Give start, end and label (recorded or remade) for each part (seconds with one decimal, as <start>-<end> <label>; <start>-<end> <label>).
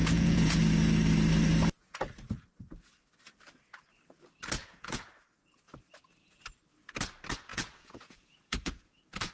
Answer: 0.0-0.6 remade; 0.6-1.8 recorded; 1.8-2.5 remade; 2.5-4.6 recorded; 4.6-5.1 remade; 5.1-7.5 recorded; 7.5-9.3 remade